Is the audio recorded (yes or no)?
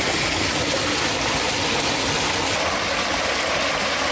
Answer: yes